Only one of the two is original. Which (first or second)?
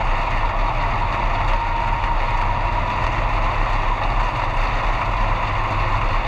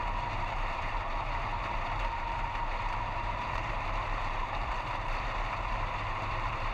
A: first